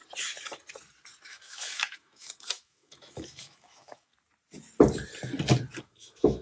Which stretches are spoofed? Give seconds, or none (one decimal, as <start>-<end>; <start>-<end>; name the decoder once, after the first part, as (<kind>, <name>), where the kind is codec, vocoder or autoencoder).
1.2-4.1 (autoencoder, DAC-VAE); 5.8-6.4